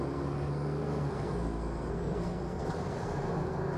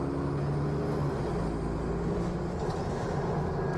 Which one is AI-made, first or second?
first